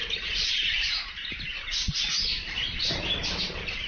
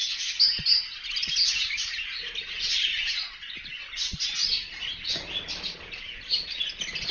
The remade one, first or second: first